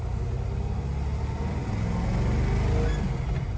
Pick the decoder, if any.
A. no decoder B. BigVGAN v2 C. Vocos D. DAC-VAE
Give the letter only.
A